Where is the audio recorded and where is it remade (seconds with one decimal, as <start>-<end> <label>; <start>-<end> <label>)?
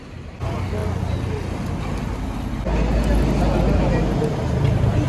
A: 0.0-5.1 recorded